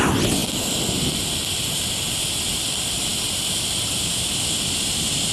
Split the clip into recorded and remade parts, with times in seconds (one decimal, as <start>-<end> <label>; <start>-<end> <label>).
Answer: 0.0-0.4 remade; 0.4-2.5 recorded; 2.5-5.3 remade